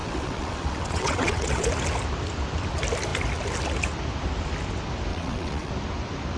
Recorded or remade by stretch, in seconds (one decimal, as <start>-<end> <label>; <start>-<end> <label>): 0.0-1.7 remade; 1.7-5.1 recorded; 5.1-5.7 remade; 5.7-6.4 recorded